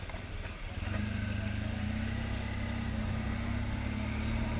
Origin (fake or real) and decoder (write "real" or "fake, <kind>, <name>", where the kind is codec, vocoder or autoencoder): real